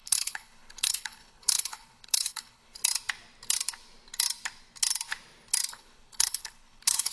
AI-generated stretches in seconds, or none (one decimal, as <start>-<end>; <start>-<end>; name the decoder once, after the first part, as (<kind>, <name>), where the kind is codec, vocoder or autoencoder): 0.0-2.8 (codec, HILCodec); 5.7-7.1